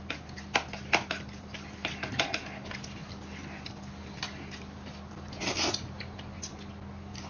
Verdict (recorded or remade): recorded